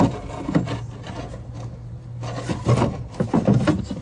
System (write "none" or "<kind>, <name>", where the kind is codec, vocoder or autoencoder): none